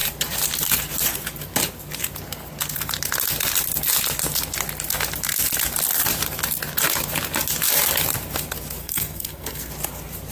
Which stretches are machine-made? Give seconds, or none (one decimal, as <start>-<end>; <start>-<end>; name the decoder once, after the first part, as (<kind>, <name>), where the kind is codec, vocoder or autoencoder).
8.8-9.7 (codec, SNAC)